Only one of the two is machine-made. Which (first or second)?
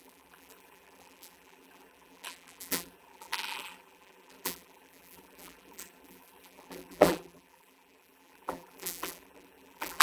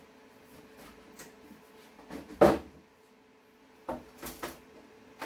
first